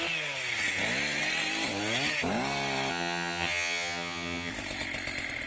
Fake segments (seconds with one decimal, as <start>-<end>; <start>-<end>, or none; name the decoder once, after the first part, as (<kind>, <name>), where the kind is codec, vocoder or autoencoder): 2.9-4.5 (vocoder, HiFi-GAN)